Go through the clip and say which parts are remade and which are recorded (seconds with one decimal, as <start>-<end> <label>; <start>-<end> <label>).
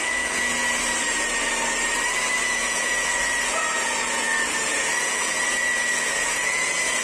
0.0-0.6 remade; 0.6-2.4 recorded; 2.4-7.0 remade